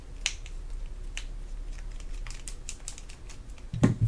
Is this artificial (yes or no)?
no